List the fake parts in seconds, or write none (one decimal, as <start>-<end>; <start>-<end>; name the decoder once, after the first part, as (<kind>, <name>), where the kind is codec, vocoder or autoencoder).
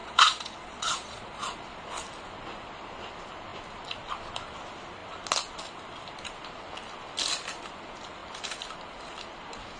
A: 0.0-1.8 (vocoder, Vocos)